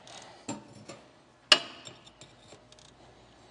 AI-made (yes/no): no